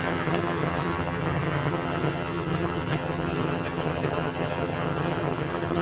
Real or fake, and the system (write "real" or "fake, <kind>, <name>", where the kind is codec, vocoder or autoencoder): fake, vocoder, HiFi-GAN